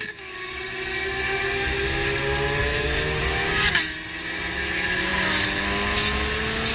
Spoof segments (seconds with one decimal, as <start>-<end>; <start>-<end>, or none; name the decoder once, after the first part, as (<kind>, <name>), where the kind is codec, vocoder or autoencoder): 2.6-3.2 (codec, DAC)